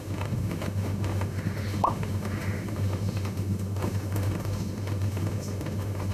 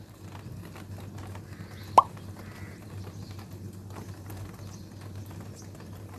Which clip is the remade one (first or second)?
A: first